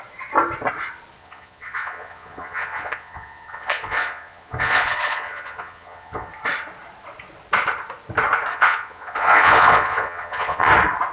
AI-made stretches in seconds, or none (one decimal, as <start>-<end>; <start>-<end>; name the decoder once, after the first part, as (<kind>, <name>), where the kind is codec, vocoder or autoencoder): 1.2-6.3 (vocoder, Vocos); 8.5-10.7